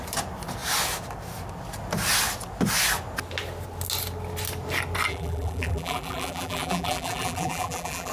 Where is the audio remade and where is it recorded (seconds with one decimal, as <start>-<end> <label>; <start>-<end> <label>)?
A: 0.0-5.1 recorded; 5.1-8.1 remade